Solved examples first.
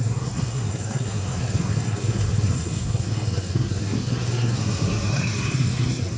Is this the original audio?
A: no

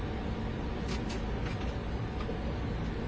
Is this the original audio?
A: yes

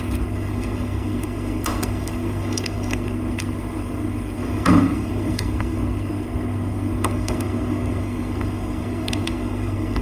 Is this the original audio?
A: no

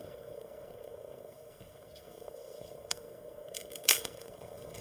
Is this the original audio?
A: no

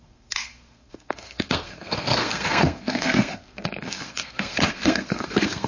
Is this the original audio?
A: no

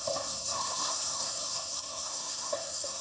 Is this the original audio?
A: no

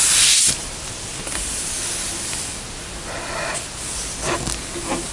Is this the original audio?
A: yes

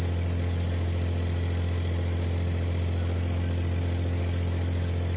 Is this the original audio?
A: yes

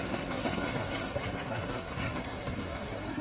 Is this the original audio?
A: no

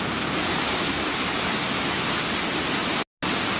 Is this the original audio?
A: yes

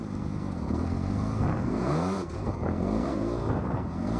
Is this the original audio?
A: no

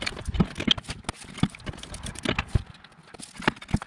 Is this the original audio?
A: yes